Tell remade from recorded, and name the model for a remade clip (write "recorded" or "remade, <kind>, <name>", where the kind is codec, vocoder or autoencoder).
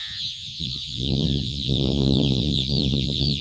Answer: remade, vocoder, Vocos